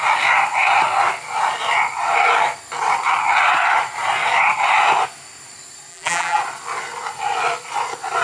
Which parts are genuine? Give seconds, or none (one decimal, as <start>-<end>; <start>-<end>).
0.0-5.9; 6.4-8.2